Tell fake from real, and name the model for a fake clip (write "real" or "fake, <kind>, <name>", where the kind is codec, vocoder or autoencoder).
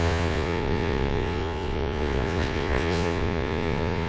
fake, vocoder, Vocos